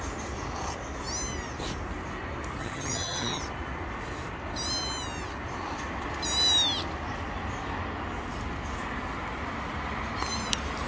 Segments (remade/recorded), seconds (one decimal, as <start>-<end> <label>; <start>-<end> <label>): 0.0-2.6 recorded; 2.6-3.4 remade; 3.4-10.9 recorded